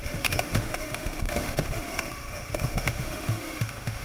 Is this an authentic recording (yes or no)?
no